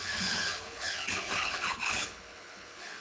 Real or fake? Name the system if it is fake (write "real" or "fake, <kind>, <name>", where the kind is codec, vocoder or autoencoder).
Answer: fake, codec, HILCodec